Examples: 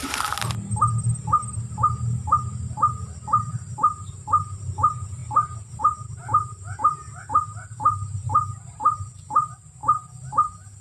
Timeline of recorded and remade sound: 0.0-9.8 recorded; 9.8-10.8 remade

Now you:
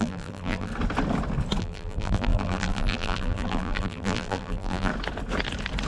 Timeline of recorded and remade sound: 0.0-0.7 remade; 0.7-1.6 recorded; 1.6-4.9 remade; 4.9-5.9 recorded

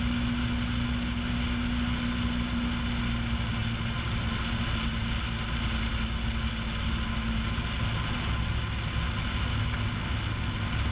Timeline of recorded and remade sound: 0.0-10.9 recorded

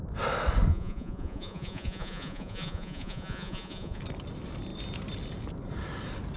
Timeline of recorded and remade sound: 0.0-0.7 recorded; 0.7-4.0 remade; 4.0-6.4 recorded

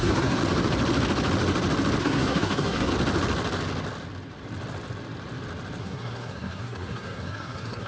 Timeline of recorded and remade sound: 0.0-0.4 remade; 0.4-2.0 recorded; 2.0-2.9 remade; 2.9-5.8 recorded; 5.8-7.9 remade

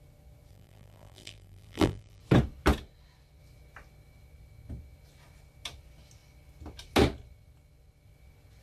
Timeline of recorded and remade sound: 0.0-0.5 recorded; 0.5-2.2 remade; 2.2-8.6 recorded

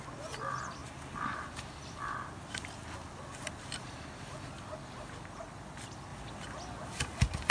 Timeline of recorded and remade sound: 0.0-7.5 recorded